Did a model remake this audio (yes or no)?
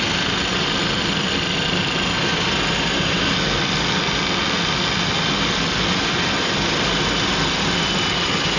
no